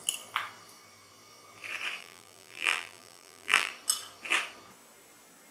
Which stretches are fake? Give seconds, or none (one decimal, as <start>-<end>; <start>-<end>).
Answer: 2.0-3.7